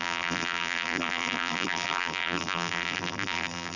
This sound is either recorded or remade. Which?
remade